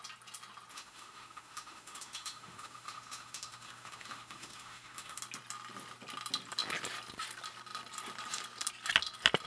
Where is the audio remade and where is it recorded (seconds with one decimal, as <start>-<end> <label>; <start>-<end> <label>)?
0.0-0.7 recorded; 0.7-5.2 remade; 5.2-9.5 recorded